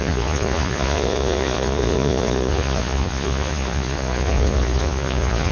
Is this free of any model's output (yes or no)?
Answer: no